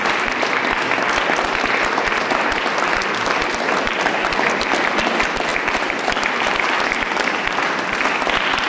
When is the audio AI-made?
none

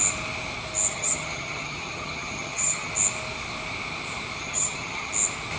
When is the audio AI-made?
0.9-2.9 (vocoder, HiFi-GAN); 4.4-5.1

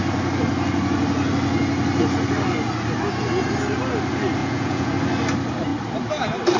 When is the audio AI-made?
4.4-4.9 (vocoder, Vocos)